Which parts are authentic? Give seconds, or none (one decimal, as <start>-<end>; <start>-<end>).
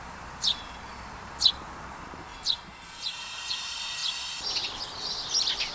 2.3-3.5; 4.0-5.7